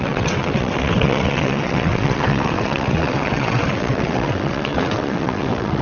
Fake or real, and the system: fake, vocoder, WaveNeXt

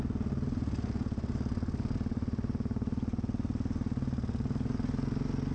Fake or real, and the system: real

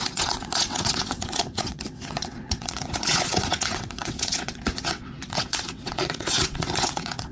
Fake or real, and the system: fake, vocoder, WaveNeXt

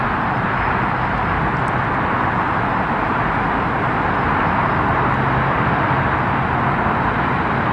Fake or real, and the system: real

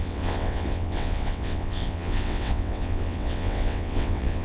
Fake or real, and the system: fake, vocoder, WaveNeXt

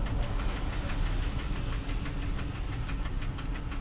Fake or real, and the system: real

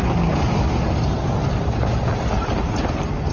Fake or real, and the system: real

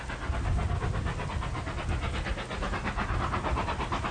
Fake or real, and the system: real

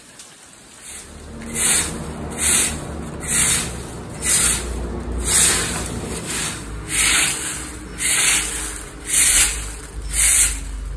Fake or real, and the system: real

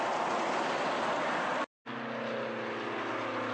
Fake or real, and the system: real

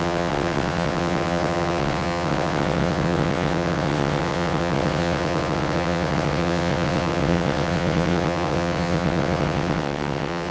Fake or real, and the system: fake, vocoder, WaveNeXt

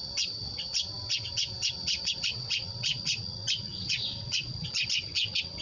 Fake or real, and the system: fake, vocoder, WaveNeXt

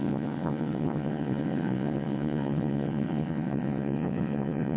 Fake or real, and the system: fake, vocoder, WaveNeXt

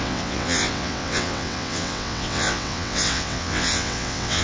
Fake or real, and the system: fake, vocoder, WaveNeXt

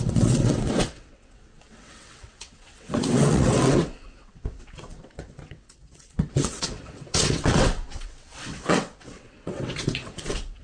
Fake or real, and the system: fake, vocoder, WaveNeXt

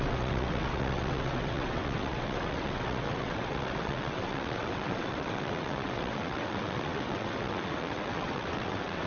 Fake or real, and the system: fake, vocoder, WaveNeXt